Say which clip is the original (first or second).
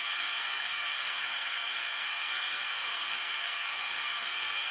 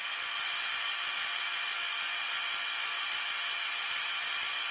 second